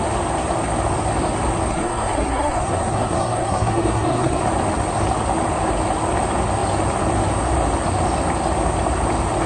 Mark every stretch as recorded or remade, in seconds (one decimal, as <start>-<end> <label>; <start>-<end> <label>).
0.0-1.7 recorded; 1.7-4.4 remade; 4.4-9.5 recorded